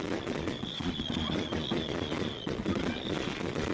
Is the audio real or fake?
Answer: fake